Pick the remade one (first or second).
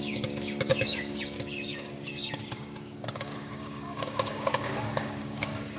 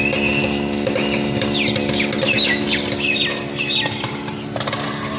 first